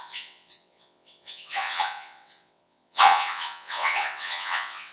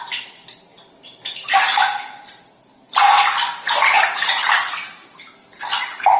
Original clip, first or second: second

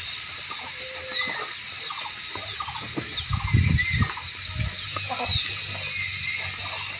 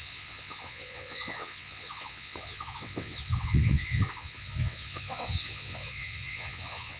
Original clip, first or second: first